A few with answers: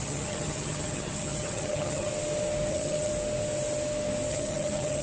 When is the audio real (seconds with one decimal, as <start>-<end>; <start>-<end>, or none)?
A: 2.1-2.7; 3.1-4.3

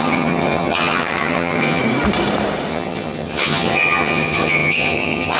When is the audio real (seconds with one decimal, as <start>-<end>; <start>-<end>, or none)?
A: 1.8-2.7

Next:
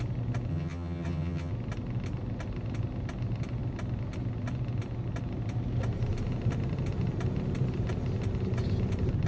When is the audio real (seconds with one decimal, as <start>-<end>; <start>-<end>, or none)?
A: 0.0-0.5; 1.5-9.3